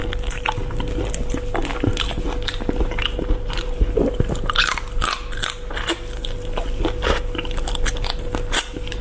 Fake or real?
real